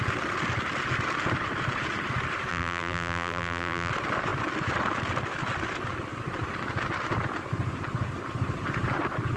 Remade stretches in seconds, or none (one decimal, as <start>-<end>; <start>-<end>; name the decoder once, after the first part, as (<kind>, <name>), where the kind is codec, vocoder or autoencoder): 2.5-3.9 (vocoder, BigVGAN v2)